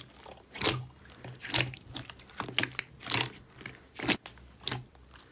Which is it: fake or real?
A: real